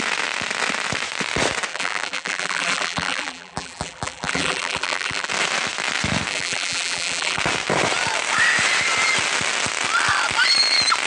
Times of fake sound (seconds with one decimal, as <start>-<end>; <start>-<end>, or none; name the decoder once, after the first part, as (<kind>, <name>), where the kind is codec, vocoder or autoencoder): 1.7-5.3 (vocoder, BigVGAN v2); 6.3-7.4